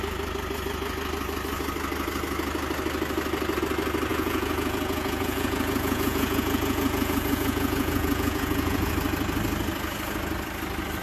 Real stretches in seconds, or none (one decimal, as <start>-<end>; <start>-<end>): 0.0-4.1; 8.9-11.0